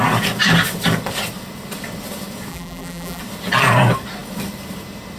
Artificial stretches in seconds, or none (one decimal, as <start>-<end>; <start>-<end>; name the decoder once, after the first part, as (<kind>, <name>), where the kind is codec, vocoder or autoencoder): 2.5-3.2 (vocoder, BigVGAN v2)

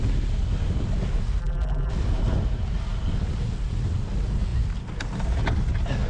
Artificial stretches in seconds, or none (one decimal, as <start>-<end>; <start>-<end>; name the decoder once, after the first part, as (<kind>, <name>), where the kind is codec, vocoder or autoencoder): 1.4-1.9 (vocoder, BigVGAN v2)

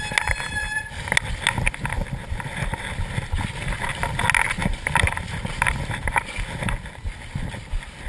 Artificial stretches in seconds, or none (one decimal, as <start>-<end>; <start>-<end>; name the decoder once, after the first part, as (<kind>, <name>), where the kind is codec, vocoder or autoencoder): 4.6-6.5 (vocoder, BigVGAN v2)